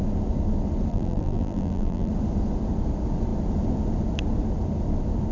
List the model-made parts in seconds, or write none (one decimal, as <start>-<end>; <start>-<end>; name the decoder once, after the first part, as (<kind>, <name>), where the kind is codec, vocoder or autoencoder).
0.9-2.1 (vocoder, BigVGAN v2)